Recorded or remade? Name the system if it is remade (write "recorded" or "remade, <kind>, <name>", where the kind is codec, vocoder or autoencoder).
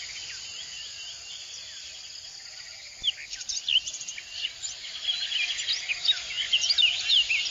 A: recorded